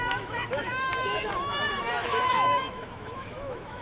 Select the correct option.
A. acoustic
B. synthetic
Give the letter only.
B